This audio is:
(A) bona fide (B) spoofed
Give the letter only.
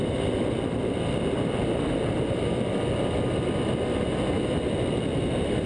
A